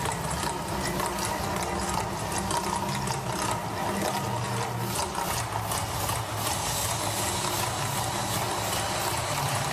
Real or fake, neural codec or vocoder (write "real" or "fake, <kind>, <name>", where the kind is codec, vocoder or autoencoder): real